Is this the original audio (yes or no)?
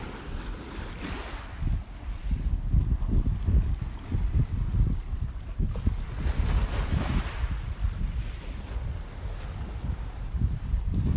yes